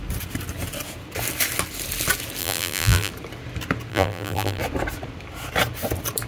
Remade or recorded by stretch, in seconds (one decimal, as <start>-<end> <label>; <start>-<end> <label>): 0.0-2.4 recorded; 2.4-3.1 remade; 3.1-3.9 recorded; 3.9-4.6 remade; 4.6-6.3 recorded